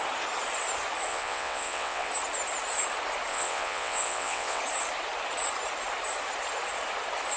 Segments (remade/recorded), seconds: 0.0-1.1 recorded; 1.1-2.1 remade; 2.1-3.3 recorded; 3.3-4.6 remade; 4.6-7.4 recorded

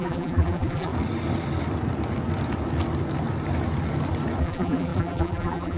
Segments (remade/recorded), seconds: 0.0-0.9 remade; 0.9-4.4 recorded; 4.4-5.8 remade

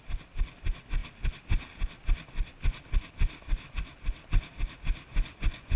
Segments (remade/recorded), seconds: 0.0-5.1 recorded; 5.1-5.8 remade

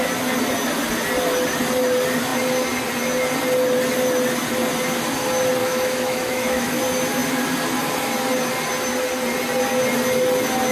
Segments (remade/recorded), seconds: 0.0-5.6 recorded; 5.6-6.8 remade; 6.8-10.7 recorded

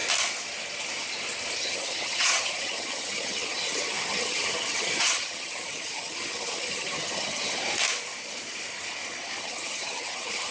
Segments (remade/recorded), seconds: 0.0-1.6 recorded; 1.6-7.6 remade; 7.6-9.4 recorded; 9.4-10.5 remade

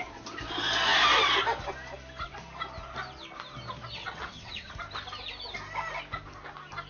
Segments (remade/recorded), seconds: 0.0-4.0 recorded; 4.0-4.7 remade; 4.7-6.9 recorded

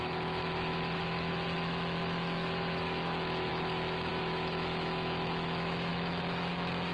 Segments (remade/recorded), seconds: 0.0-6.9 remade

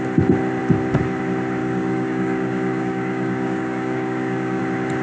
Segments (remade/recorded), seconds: 0.0-1.6 recorded; 1.6-4.6 remade; 4.6-5.0 recorded